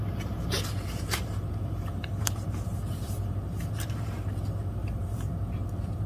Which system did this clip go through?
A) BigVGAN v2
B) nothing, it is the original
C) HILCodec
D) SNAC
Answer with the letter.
A